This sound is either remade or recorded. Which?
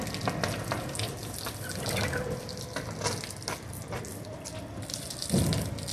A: recorded